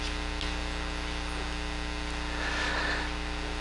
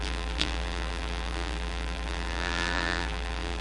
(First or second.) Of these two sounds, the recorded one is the first